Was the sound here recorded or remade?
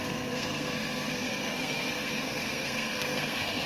remade